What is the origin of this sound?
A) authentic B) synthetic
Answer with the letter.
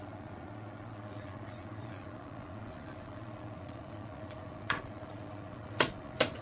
B